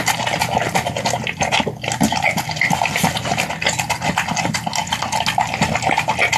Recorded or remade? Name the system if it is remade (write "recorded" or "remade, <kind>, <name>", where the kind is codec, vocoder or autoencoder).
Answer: recorded